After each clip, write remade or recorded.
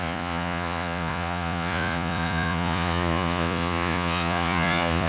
remade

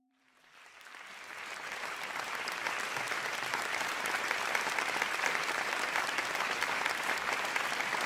remade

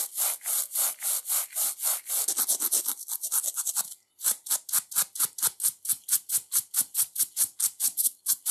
recorded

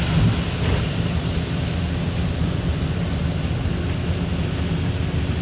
recorded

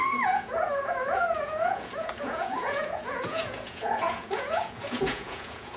remade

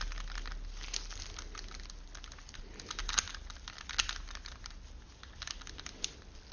recorded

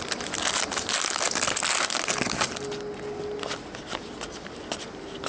recorded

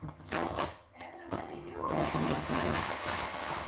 remade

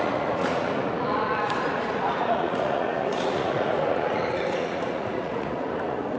remade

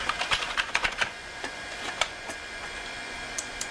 remade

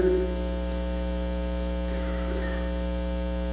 recorded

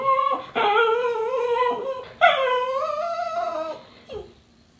recorded